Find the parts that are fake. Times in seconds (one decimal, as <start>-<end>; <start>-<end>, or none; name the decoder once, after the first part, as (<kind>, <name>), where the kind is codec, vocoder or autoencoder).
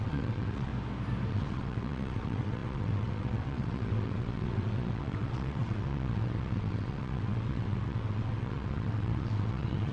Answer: 0.0-0.7 (vocoder, WaveNeXt); 1.3-9.9